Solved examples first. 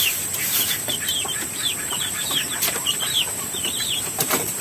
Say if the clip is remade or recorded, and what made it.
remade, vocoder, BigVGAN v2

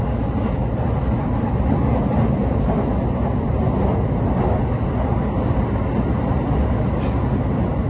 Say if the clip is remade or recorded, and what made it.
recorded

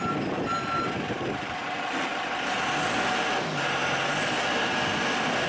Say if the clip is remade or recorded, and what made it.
recorded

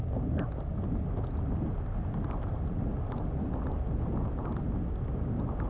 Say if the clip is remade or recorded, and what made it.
recorded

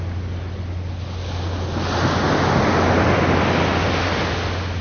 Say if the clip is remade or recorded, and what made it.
recorded